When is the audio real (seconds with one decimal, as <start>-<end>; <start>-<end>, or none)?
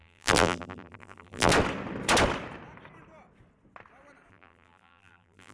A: 1.5-4.3